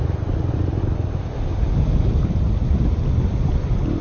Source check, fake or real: real